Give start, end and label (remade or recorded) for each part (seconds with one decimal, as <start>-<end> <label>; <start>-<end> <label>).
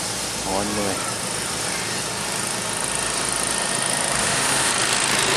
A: 0.0-4.2 recorded; 4.2-4.7 remade; 4.7-5.4 recorded